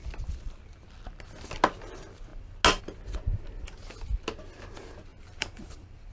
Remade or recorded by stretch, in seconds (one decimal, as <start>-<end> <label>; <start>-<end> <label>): 0.0-5.1 recorded; 5.1-6.1 remade